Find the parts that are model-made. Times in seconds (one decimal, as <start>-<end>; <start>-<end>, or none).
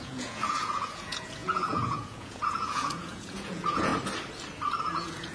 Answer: 0.0-3.9; 4.8-5.3